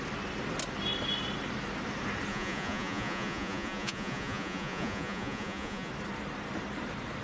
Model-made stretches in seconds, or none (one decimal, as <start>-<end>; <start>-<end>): 2.3-5.9